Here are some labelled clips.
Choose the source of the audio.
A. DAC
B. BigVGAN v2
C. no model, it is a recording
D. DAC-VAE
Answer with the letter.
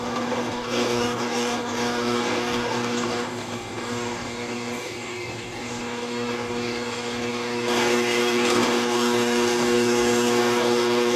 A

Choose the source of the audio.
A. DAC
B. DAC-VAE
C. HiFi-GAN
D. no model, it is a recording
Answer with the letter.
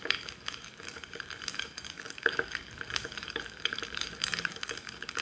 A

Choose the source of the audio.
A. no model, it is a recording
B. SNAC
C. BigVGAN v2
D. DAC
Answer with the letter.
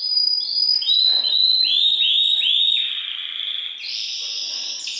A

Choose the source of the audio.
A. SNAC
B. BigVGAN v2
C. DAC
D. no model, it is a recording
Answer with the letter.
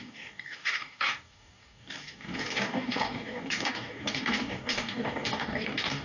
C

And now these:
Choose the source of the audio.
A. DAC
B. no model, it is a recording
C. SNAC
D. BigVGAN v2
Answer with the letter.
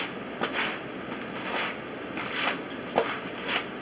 B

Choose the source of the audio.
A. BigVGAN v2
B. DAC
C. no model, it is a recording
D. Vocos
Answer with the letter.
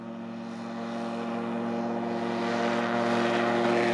C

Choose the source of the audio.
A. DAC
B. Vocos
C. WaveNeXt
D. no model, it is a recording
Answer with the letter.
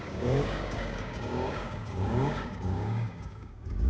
A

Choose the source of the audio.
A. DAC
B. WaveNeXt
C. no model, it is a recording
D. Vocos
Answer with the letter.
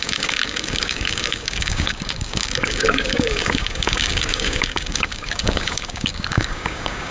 A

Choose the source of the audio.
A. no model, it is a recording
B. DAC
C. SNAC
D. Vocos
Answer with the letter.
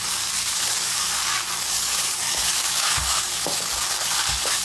B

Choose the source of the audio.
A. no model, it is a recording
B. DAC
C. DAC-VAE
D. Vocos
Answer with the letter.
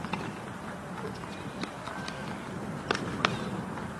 A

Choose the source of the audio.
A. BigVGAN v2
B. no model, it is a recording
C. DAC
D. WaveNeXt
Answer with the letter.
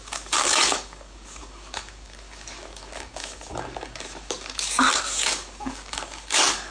C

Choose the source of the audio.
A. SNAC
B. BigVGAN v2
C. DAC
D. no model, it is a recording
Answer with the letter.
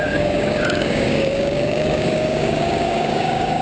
C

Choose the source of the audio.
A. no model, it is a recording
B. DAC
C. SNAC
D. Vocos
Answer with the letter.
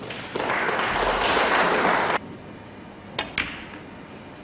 A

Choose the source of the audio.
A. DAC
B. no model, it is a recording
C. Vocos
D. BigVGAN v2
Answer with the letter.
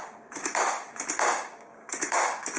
A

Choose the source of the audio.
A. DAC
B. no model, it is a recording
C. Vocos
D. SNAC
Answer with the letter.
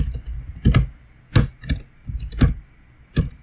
B